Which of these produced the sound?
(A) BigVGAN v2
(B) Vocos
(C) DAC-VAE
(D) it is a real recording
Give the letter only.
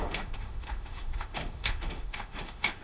C